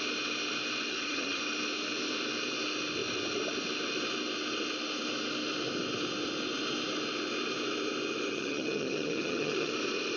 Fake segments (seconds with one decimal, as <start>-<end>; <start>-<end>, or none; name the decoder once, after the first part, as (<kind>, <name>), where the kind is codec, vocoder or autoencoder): 0.9-1.4 (vocoder, HiFi-GAN); 8.3-9.7